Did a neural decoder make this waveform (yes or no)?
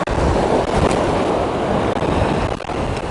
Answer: no